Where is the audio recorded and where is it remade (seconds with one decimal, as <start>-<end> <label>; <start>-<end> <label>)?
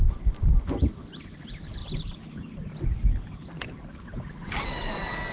0.0-5.3 recorded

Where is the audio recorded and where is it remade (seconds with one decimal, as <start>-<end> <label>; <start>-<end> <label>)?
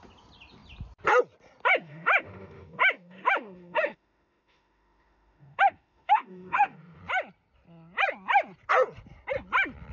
0.0-1.7 recorded; 1.7-7.0 remade; 7.0-9.9 recorded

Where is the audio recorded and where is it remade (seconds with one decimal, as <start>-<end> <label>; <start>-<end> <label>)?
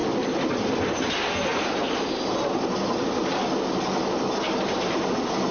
0.0-5.5 recorded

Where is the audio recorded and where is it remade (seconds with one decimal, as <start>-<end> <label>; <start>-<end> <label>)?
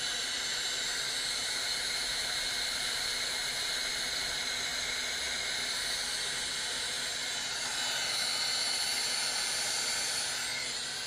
0.0-11.1 recorded